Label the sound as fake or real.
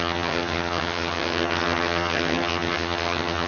fake